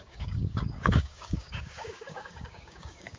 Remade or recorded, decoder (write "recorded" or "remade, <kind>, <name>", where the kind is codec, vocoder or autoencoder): remade, codec, DAC